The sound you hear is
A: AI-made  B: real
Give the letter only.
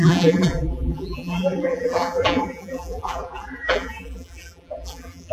A